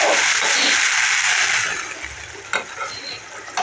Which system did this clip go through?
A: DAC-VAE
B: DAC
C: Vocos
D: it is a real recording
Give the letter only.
D